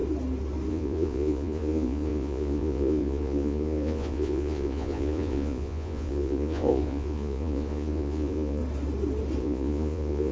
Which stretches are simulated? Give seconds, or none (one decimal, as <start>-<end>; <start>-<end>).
0.7-8.6; 9.4-10.3